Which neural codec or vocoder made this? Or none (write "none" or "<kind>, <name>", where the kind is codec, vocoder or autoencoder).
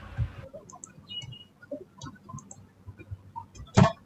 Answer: none